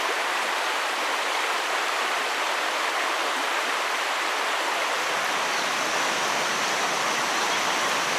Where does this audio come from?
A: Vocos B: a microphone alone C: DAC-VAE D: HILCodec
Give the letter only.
B